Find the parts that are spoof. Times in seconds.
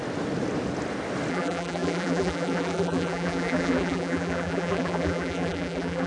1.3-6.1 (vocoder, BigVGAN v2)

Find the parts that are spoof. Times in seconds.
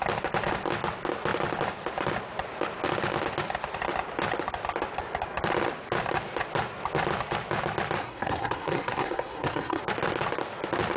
8.0-9.8 (codec, SNAC)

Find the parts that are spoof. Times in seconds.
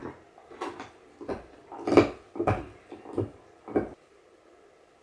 none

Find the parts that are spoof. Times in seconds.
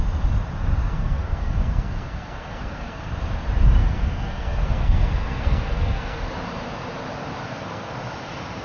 0.8-3.1 (codec, SNAC); 3.8-6.3; 7.4-7.9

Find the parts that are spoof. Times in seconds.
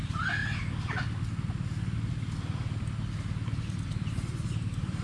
none